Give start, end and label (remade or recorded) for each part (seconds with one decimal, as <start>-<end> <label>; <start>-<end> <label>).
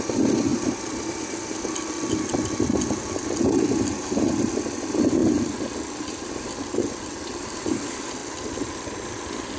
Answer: 0.0-9.6 recorded